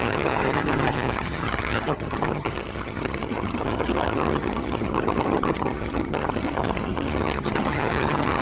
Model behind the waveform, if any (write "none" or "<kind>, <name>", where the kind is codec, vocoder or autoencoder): vocoder, HiFi-GAN